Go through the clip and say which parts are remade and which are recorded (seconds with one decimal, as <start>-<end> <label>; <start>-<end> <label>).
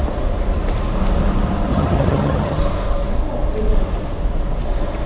0.0-1.7 recorded; 1.7-2.6 remade; 2.6-5.1 recorded